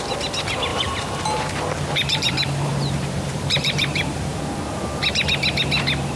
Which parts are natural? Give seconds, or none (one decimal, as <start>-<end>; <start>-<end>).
0.0-0.7; 4.4-6.2